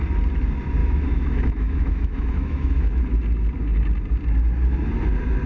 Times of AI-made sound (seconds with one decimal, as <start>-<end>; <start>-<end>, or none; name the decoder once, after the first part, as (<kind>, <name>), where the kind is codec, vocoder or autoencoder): 0.8-3.0 (autoencoder, DAC-VAE)